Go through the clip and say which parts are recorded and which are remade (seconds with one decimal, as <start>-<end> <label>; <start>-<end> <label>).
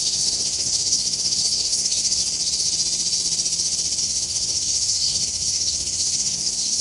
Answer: 0.0-2.2 remade; 2.2-4.0 recorded; 4.0-6.8 remade